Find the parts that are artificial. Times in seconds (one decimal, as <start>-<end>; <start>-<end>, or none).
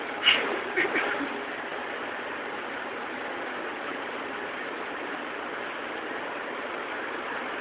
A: none